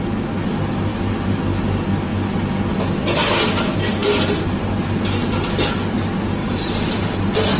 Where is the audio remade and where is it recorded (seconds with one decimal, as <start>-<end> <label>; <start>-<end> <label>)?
0.0-0.9 recorded; 0.9-1.4 remade; 1.4-6.4 recorded; 6.4-7.1 remade; 7.1-7.6 recorded